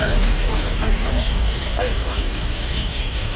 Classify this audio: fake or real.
fake